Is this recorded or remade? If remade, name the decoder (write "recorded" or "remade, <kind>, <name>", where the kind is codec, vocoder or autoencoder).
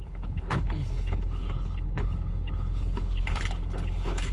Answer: remade, codec, HILCodec